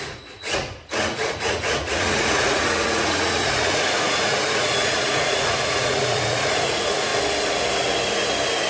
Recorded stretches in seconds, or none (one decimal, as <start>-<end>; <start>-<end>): 7.1-8.7